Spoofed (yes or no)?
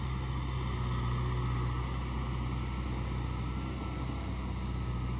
no